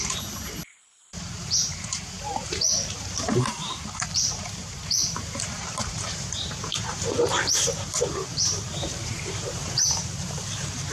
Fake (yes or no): yes